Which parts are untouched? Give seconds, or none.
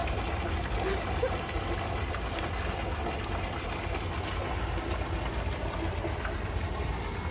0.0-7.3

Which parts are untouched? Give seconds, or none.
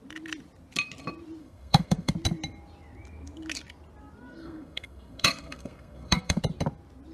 0.0-1.4; 2.1-4.3; 6.4-7.1